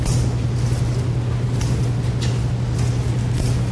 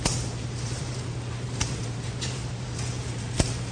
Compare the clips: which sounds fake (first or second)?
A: second